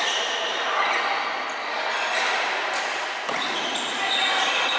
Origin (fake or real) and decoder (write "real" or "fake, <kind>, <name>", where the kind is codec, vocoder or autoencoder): real